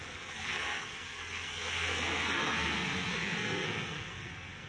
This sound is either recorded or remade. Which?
remade